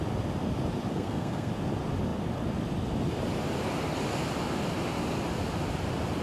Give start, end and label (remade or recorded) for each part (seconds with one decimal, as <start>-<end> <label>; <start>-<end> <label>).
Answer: 0.0-0.9 recorded; 0.9-1.5 remade; 1.5-6.2 recorded